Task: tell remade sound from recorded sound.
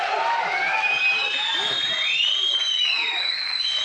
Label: recorded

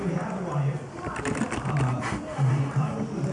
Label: recorded